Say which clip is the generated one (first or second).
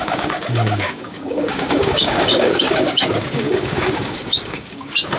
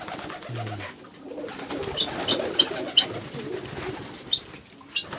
first